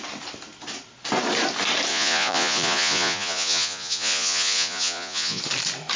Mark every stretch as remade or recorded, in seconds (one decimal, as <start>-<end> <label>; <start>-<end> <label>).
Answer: 0.0-1.9 recorded; 1.9-5.4 remade; 5.4-6.0 recorded

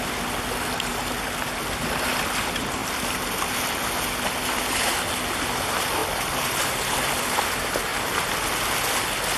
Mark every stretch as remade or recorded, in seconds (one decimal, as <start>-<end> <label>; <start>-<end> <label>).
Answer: 0.0-6.0 recorded; 6.0-7.2 remade; 7.2-9.4 recorded

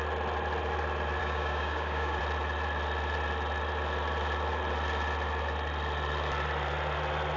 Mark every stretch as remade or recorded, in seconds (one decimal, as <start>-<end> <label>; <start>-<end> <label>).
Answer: 0.0-1.2 recorded; 1.2-2.2 remade; 2.2-7.4 recorded